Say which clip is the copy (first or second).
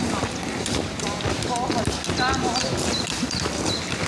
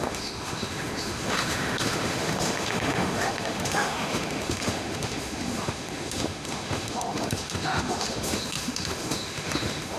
second